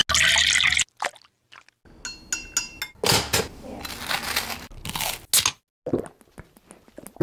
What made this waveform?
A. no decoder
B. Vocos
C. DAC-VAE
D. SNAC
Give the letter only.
A